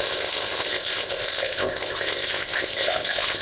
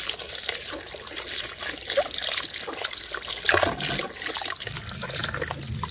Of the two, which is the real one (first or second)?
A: second